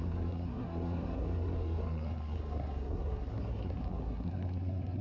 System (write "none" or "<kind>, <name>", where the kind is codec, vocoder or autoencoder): codec, SNAC